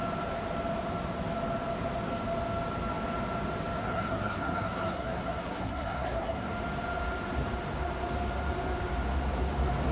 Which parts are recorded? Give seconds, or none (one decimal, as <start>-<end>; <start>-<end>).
0.0-3.8; 6.5-9.9